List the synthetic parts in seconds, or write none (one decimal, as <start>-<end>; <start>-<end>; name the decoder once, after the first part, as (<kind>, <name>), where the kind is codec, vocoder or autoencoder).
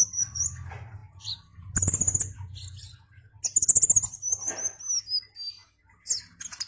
none